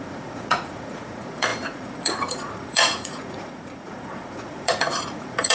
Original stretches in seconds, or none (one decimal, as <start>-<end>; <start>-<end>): none